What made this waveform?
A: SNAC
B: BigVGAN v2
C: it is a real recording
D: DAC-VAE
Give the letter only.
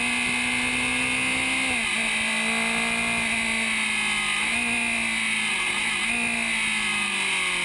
C